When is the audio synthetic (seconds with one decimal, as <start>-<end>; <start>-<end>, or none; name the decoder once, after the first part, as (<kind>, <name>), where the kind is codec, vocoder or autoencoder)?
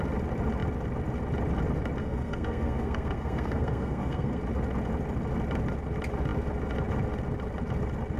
2.0-4.4 (codec, SNAC)